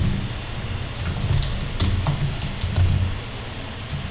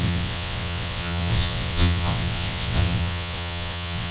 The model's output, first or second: second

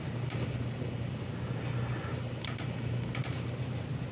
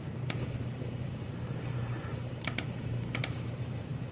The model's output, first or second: second